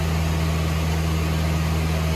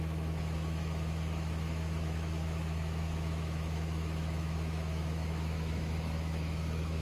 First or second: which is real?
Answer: first